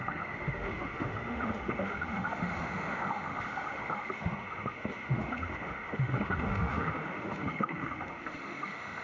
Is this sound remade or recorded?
remade